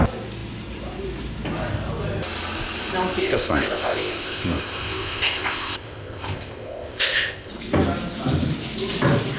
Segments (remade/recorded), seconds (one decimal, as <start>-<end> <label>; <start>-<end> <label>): 0.0-3.2 recorded; 3.2-7.5 remade; 7.5-9.4 recorded